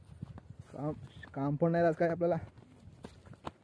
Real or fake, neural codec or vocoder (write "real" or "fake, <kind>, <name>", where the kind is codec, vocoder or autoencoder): real